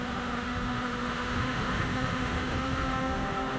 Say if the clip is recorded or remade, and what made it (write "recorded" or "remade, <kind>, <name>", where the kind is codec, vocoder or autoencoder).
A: remade, autoencoder, DAC-VAE